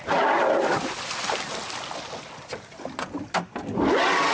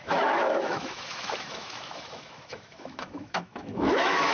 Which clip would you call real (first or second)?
first